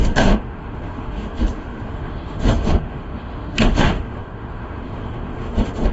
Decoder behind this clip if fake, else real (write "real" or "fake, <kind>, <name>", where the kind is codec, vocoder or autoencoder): fake, autoencoder, DAC-VAE